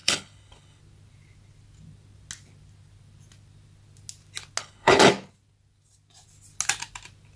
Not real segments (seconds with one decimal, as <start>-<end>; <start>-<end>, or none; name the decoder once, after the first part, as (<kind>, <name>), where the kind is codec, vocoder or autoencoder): 0.0-0.8 (codec, HILCodec); 4.6-5.1